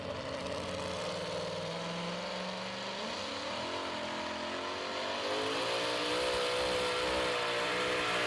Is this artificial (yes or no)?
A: no